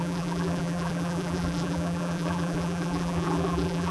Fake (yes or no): yes